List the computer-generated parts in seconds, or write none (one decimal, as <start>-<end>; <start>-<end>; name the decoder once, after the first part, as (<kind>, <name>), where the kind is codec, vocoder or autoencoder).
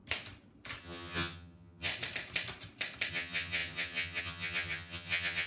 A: 0.8-1.9 (vocoder, HiFi-GAN); 3.1-5.5